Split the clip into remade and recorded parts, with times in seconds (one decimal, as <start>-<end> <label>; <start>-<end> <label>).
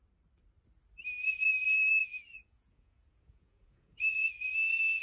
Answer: 0.0-2.0 recorded; 2.0-4.5 remade; 4.5-5.0 recorded